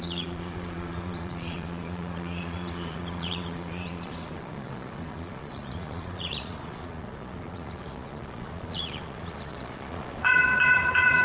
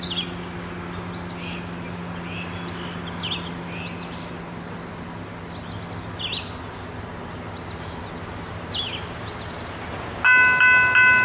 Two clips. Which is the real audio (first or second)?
second